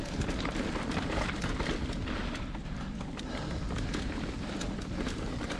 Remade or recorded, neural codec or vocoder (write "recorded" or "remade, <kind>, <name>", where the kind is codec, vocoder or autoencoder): recorded